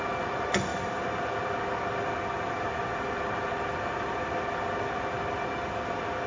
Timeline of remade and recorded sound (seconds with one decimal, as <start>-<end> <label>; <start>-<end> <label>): 0.0-6.3 recorded